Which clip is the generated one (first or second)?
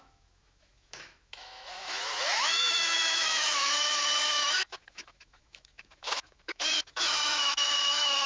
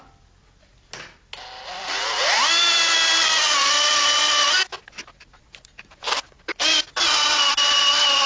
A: first